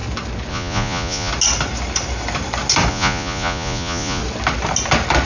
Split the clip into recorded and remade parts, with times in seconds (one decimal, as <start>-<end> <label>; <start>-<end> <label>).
0.0-0.5 recorded; 0.5-1.3 remade; 1.3-2.9 recorded; 2.9-4.2 remade; 4.2-5.3 recorded